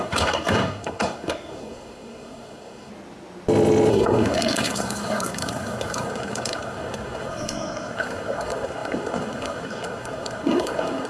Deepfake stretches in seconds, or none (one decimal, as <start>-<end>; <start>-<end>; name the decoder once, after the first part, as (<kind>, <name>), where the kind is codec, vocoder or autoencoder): 0.0-2.9 (codec, SNAC); 3.9-11.1

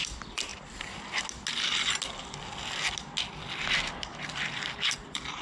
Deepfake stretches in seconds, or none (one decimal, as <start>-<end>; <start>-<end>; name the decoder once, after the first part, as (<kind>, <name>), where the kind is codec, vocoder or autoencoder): 0.0-0.5 (vocoder, BigVGAN v2); 3.7-5.4

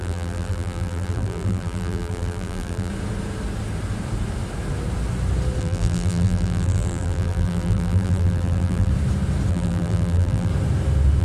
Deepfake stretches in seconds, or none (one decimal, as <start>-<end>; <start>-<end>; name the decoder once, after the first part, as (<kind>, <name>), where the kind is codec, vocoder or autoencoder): 0.0-2.9 (vocoder, BigVGAN v2); 5.6-8.9; 9.5-10.5

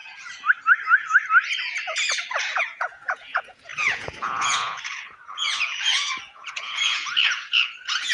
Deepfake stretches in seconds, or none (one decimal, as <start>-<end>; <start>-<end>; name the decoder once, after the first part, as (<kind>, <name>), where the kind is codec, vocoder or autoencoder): 2.4-8.1 (vocoder, Vocos)

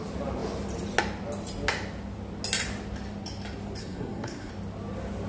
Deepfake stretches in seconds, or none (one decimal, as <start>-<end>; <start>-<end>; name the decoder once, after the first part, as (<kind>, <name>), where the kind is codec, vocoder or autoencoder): 3.8-4.5 (codec, SNAC)

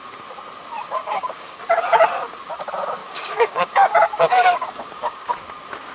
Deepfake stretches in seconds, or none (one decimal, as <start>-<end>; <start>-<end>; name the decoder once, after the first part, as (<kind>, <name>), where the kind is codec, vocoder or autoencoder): 1.0-1.6 (codec, DAC); 3.0-5.3